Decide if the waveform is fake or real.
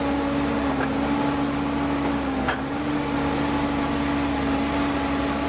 real